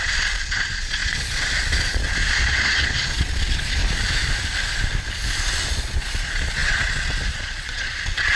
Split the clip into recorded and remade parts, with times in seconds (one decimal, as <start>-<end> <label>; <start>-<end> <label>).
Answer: 0.0-3.8 remade; 3.8-5.7 recorded; 5.7-8.4 remade